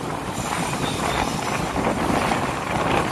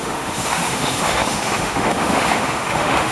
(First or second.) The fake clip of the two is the second